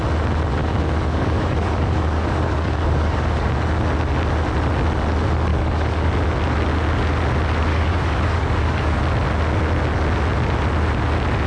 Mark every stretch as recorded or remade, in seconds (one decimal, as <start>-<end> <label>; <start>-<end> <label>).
0.0-0.6 recorded; 0.6-3.5 remade; 3.5-5.5 recorded; 5.5-6.1 remade; 6.1-7.7 recorded; 7.7-9.0 remade; 9.0-11.5 recorded